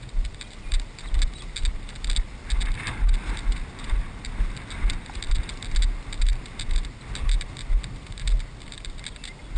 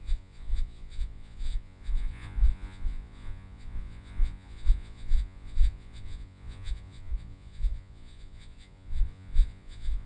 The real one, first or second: first